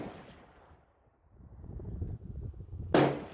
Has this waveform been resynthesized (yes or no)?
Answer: no